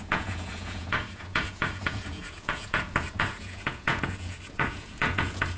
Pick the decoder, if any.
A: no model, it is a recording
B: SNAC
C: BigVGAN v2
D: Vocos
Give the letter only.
D